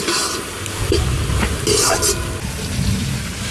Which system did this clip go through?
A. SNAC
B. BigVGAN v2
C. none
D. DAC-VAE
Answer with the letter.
C